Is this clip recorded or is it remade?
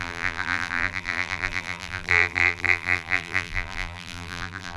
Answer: remade